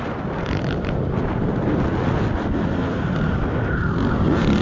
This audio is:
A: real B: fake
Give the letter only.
A